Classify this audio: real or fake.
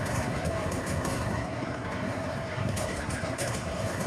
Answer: fake